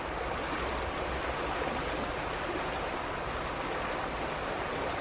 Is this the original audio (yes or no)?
yes